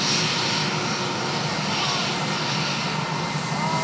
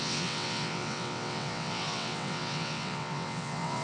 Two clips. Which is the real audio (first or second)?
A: first